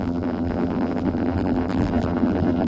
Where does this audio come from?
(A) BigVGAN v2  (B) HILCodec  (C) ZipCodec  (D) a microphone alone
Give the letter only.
A